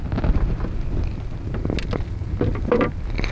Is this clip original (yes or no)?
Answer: yes